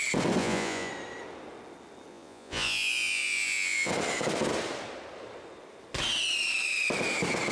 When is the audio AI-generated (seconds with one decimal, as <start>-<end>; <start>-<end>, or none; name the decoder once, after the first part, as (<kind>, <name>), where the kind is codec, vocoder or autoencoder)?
0.4-0.9 (vocoder, Vocos); 2.1-3.9